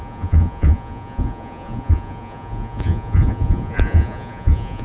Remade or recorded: remade